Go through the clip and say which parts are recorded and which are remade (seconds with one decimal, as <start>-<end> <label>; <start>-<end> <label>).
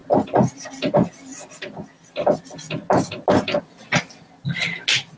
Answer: 0.0-5.2 recorded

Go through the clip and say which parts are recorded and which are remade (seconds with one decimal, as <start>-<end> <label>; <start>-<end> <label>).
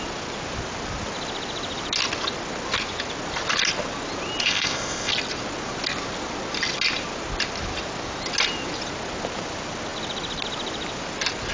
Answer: 0.0-4.4 recorded; 4.4-5.1 remade; 5.1-11.5 recorded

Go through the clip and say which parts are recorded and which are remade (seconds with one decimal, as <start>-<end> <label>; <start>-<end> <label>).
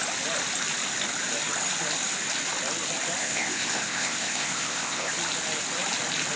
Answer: 0.0-3.2 recorded; 3.2-5.1 remade; 5.1-6.4 recorded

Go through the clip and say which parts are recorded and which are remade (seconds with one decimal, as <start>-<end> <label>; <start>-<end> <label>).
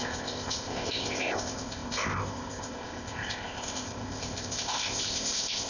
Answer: 0.0-5.7 remade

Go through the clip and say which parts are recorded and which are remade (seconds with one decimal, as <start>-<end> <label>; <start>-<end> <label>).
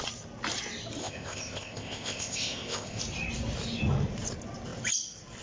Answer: 0.0-1.0 recorded; 1.0-3.0 remade; 3.0-5.4 recorded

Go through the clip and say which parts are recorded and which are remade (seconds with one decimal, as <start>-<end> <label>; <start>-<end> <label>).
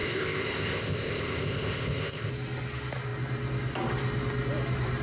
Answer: 0.0-2.3 remade; 2.3-5.0 recorded